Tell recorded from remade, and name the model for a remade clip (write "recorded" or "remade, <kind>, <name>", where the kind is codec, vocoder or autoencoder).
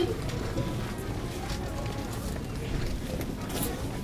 recorded